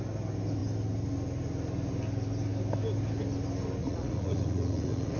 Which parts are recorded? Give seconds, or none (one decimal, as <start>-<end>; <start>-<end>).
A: 0.0-3.8